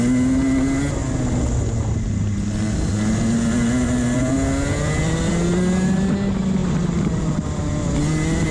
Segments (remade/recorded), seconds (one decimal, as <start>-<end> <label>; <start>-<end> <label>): 0.0-8.5 recorded